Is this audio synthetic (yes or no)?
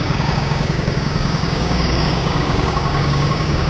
yes